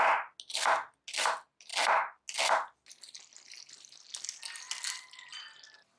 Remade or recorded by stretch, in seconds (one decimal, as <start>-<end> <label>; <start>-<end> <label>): 0.0-6.0 recorded